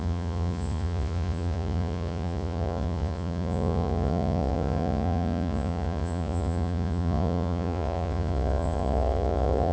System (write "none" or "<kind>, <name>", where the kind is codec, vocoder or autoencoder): vocoder, Vocos